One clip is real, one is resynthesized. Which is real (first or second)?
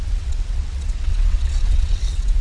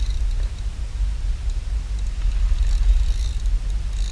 second